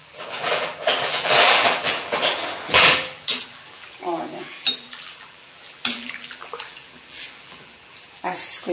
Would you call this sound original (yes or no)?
no